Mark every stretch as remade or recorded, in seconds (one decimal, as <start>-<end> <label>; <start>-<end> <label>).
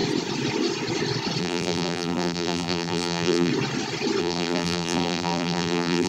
0.0-1.4 recorded; 1.4-3.5 remade; 3.5-4.2 recorded; 4.2-6.1 remade